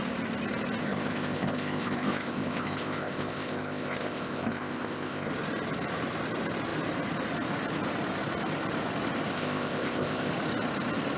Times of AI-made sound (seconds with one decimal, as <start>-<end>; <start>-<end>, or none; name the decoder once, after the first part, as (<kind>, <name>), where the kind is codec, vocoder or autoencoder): 0.8-5.3 (codec, ZipCodec); 9.3-10.3